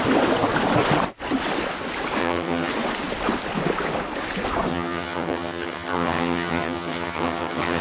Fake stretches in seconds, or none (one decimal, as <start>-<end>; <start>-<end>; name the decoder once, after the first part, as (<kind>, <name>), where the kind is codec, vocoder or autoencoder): 2.2-2.7 (vocoder, HiFi-GAN); 4.7-7.8